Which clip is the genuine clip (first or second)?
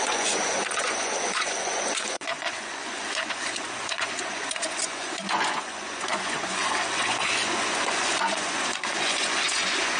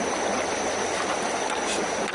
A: second